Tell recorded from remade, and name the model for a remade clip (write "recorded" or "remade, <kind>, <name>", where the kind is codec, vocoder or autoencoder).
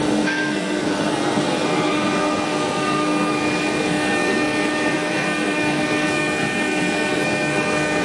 remade, codec, SNAC